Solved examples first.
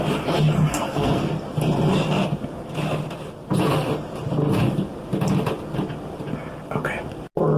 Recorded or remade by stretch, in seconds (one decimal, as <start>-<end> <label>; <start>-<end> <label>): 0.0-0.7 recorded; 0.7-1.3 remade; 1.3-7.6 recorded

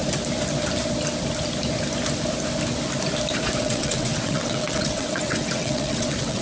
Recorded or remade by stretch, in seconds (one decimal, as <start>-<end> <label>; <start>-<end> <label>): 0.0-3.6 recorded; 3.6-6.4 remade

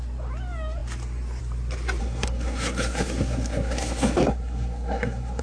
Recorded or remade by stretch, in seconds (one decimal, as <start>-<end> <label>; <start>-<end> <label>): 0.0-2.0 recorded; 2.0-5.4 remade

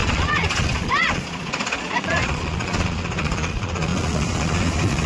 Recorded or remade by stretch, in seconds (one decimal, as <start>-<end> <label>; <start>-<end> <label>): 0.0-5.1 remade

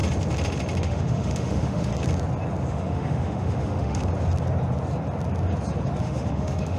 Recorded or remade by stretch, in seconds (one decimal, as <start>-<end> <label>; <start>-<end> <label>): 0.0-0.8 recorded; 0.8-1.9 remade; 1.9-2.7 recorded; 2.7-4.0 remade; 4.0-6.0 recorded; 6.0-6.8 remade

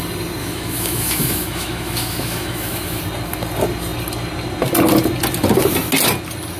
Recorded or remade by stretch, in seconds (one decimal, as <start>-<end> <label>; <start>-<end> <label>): 0.0-0.4 recorded; 0.4-3.0 remade; 3.0-6.6 recorded

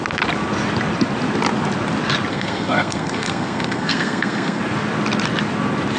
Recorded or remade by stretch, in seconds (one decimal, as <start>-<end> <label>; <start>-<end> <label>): 0.0-2.3 recorded; 2.3-4.6 remade; 4.6-6.0 recorded

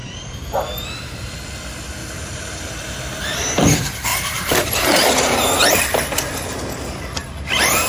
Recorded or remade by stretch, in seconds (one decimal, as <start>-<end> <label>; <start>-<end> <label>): 0.0-0.6 remade; 0.6-2.0 recorded; 2.0-2.7 remade; 2.7-4.1 recorded; 4.1-5.5 remade; 5.5-7.9 recorded